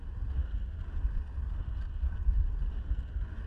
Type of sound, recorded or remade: recorded